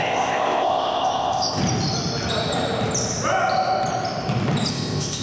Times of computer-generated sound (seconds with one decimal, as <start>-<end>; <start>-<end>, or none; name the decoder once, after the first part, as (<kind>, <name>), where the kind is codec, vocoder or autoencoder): 0.0-1.6 (codec, ZipCodec); 4.7-5.2